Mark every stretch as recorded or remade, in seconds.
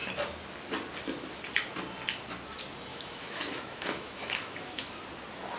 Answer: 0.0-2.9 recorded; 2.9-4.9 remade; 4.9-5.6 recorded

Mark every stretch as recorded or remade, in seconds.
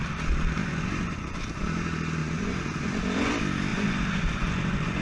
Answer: 0.0-0.6 recorded; 0.6-1.6 remade; 1.6-2.2 recorded; 2.2-3.3 remade; 3.3-3.7 recorded; 3.7-5.0 remade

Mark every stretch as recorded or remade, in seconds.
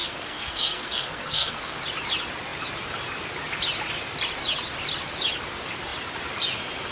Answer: 0.0-1.8 remade; 1.8-6.9 recorded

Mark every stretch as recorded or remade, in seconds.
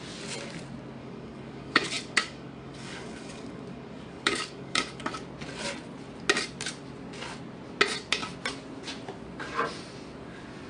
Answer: 0.0-1.0 recorded; 1.0-5.1 remade; 5.1-10.7 recorded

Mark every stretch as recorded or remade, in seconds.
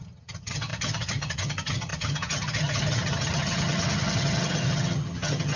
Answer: 0.0-5.6 remade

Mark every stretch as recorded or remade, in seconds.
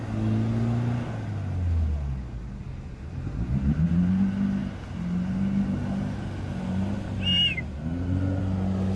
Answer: 0.0-2.6 recorded; 2.6-3.9 remade; 3.9-9.0 recorded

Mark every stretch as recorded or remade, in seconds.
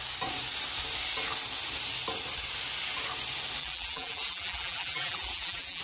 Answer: 0.0-3.6 recorded; 3.6-5.8 remade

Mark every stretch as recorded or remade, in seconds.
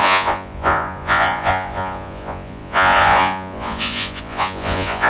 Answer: 0.0-5.1 remade